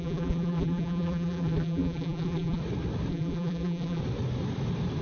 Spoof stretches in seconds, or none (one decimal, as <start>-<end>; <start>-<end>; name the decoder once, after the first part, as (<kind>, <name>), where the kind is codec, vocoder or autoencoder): 0.0-2.6 (vocoder, BigVGAN v2); 3.1-4.0